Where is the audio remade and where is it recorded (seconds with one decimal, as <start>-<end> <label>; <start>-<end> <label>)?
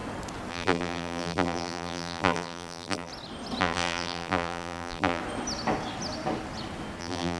0.0-0.5 recorded; 0.5-3.1 remade; 3.1-3.6 recorded; 3.6-5.2 remade; 5.2-7.0 recorded; 7.0-7.4 remade